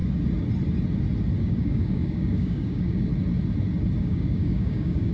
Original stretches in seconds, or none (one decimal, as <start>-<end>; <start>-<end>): 0.0-1.4; 3.1-4.0